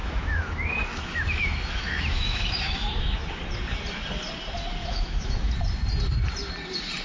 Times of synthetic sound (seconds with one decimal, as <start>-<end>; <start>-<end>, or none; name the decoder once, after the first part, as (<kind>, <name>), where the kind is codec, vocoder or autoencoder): 0.0-3.3 (autoencoder, DAC-VAE); 4.8-5.5